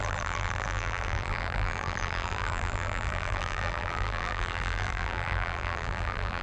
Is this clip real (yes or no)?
no